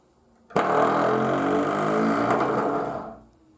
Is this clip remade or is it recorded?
recorded